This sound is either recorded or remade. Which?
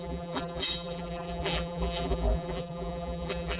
remade